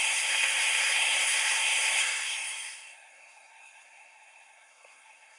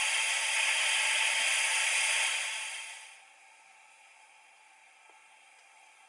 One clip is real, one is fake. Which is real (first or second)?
second